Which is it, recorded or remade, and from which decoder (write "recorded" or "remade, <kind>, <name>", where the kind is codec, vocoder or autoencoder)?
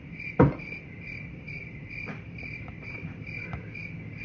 recorded